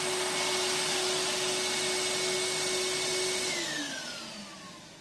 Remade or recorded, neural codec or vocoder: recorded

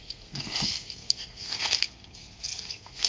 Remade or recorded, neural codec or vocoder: remade, codec, SNAC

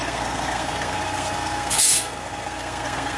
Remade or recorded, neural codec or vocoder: remade, codec, SNAC